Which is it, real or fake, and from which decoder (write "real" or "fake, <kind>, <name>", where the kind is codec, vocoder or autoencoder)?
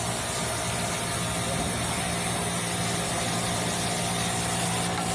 real